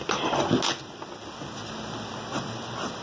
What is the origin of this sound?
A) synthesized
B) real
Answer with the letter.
B